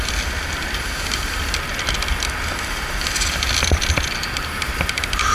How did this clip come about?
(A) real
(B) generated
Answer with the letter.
A